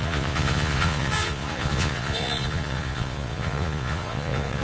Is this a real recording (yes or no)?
no